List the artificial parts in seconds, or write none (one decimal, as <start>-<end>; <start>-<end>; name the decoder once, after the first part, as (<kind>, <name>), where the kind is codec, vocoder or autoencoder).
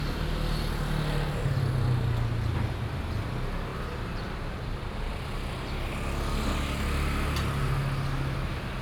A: 3.7-5.8 (vocoder, BigVGAN v2)